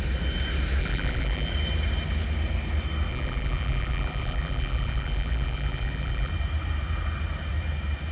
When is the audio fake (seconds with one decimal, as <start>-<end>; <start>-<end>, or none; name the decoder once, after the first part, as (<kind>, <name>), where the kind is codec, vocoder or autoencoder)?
0.8-1.5 (vocoder, BigVGAN v2); 3.1-6.3